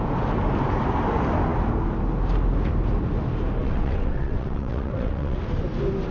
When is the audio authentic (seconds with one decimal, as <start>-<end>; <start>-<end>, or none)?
0.0-3.6; 5.4-6.1

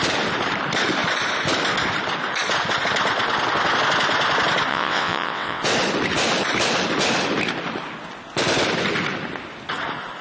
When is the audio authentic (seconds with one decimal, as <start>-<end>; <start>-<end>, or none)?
0.0-4.7; 5.6-10.2

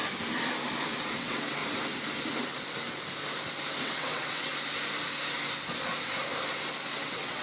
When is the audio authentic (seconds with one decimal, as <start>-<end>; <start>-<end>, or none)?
0.0-1.2; 1.6-3.8; 4.5-6.9